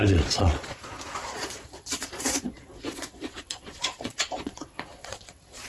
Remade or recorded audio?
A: remade